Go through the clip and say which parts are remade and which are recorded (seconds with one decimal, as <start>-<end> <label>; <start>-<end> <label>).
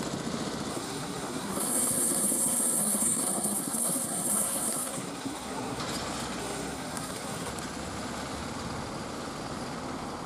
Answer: 0.0-0.7 recorded; 0.7-5.8 remade; 5.8-6.4 recorded; 6.4-7.5 remade; 7.5-10.3 recorded